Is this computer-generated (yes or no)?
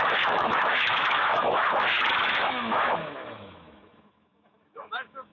yes